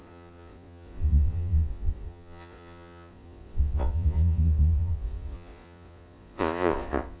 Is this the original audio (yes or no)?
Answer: no